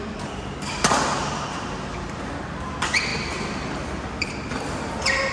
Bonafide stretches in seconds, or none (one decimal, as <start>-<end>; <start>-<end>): 0.0-5.3